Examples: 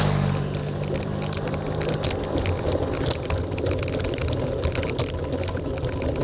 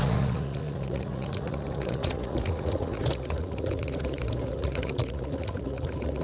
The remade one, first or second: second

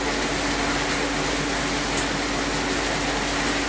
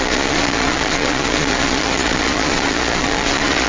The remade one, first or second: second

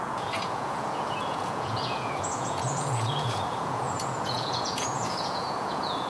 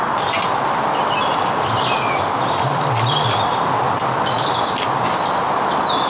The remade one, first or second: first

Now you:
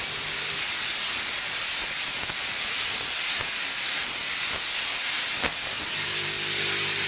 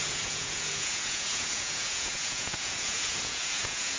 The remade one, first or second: second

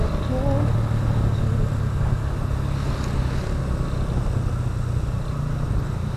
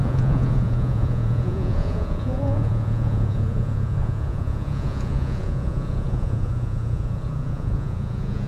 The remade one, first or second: second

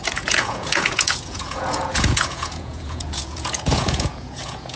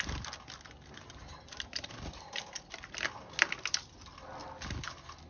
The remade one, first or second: first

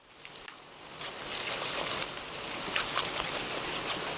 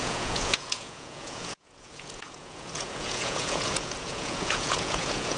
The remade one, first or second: second